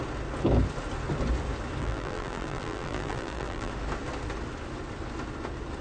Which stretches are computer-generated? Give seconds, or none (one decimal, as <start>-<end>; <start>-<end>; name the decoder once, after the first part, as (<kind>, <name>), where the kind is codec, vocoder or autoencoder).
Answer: 1.8-3.7 (vocoder, BigVGAN v2)